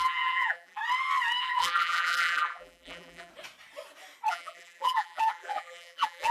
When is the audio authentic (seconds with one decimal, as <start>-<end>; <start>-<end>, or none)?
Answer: 0.8-1.4; 3.3-4.3